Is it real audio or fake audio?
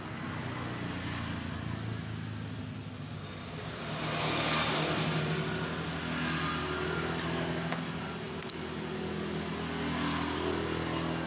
real